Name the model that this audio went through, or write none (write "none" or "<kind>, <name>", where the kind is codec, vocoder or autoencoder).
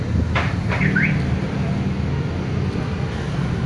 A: none